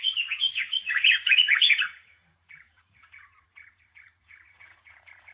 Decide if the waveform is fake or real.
fake